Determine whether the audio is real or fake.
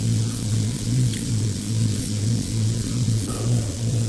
fake